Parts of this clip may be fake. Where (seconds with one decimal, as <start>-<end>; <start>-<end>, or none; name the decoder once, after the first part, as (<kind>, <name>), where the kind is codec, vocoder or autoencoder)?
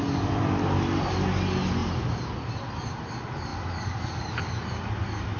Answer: none